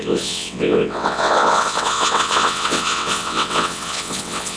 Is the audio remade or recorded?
remade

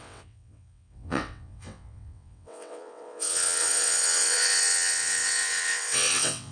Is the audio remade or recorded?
remade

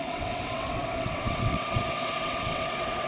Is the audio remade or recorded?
remade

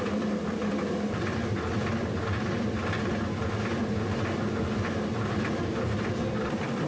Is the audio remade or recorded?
recorded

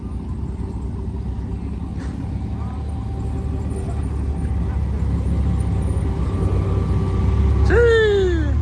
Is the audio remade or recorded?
recorded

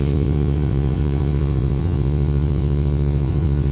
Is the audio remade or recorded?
remade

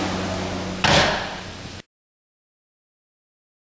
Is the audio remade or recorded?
recorded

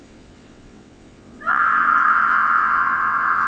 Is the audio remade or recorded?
remade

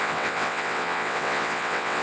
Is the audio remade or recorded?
remade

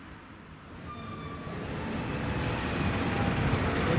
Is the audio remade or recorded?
recorded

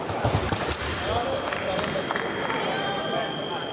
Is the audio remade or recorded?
recorded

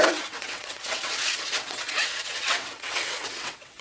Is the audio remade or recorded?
remade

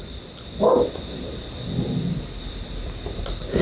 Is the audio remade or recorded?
recorded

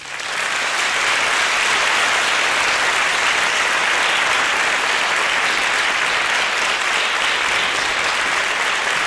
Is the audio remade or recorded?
recorded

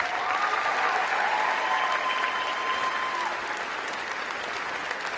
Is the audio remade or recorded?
recorded